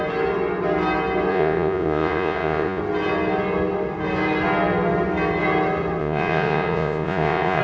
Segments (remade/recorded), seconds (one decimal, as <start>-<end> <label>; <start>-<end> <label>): 0.0-1.3 recorded; 1.3-2.8 remade; 2.8-6.0 recorded; 6.0-7.6 remade

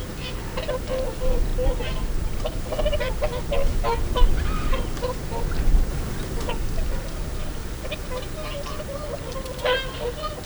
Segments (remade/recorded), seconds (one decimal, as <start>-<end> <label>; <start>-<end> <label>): 0.0-5.9 remade; 5.9-6.5 recorded; 6.5-8.0 remade; 8.0-8.8 recorded; 8.8-10.5 remade

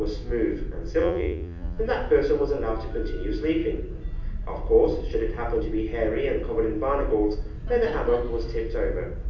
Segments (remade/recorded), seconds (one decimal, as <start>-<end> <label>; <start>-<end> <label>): 0.0-1.0 recorded; 1.0-1.8 remade; 1.8-9.3 recorded

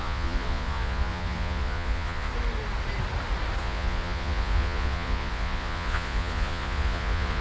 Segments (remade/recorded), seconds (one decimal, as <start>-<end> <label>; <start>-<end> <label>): 0.0-2.3 remade; 2.3-3.6 recorded; 3.6-7.4 remade

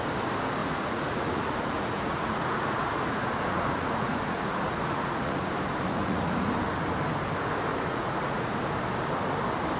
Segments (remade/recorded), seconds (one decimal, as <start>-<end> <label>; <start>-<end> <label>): 0.0-0.6 recorded; 0.6-5.5 remade; 5.5-5.9 recorded; 5.9-6.5 remade; 6.5-7.7 recorded; 7.7-8.5 remade; 8.5-9.8 recorded

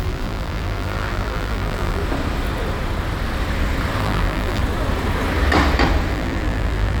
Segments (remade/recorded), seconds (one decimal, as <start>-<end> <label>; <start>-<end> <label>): 0.0-2.0 remade; 2.0-4.0 recorded; 4.0-4.6 remade; 4.6-6.1 recorded; 6.1-7.0 remade